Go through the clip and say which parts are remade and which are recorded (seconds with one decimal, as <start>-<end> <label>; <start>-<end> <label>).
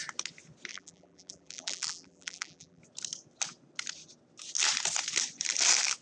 0.0-0.7 recorded; 0.7-2.8 remade; 2.8-6.0 recorded